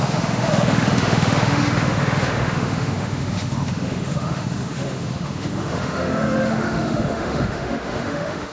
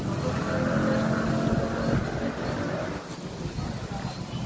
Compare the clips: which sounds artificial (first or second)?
first